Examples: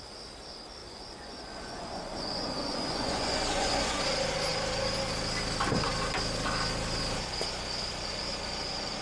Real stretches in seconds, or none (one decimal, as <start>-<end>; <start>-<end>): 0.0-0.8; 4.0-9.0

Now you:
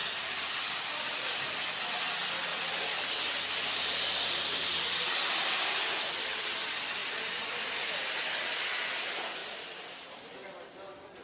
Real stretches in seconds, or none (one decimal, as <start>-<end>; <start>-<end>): 0.0-2.5; 5.8-9.4; 10.3-11.2

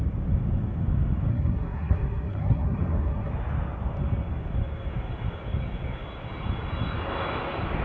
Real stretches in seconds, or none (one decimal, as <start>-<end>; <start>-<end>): 0.0-1.3; 3.3-7.8

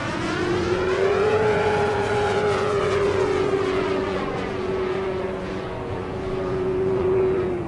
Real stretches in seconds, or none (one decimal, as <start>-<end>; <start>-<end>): none

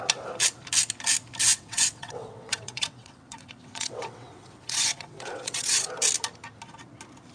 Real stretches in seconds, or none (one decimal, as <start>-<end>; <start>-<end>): 0.0-1.5; 5.9-7.3